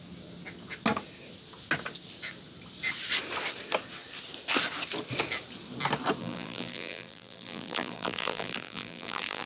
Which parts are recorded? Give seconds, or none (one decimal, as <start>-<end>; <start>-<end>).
0.0-6.2